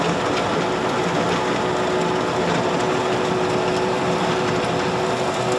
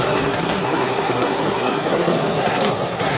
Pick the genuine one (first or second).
first